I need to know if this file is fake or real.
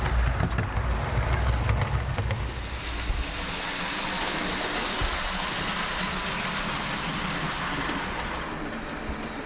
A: real